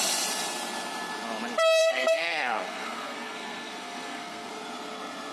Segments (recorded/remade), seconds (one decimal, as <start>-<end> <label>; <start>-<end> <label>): 0.0-1.8 recorded; 1.8-4.5 remade; 4.5-5.3 recorded